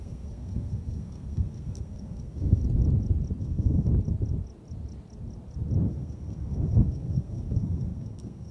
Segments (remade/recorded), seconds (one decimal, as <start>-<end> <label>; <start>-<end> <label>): 0.0-2.6 remade; 2.6-3.4 recorded; 3.4-3.9 remade; 3.9-5.9 recorded; 5.9-8.5 remade